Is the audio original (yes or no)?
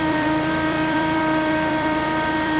no